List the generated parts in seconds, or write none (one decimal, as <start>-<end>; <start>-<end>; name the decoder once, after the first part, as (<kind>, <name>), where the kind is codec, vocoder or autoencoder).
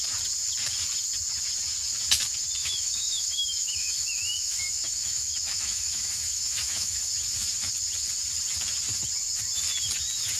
2.6-7.0 (autoencoder, DAC-VAE)